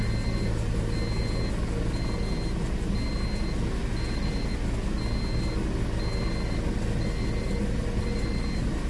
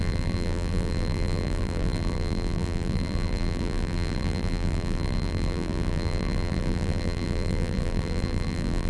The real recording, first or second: first